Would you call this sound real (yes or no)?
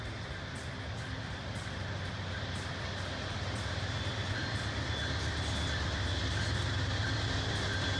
yes